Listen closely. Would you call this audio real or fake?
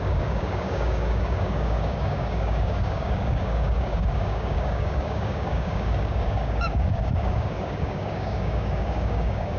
fake